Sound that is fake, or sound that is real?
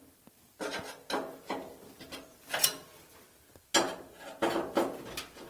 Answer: real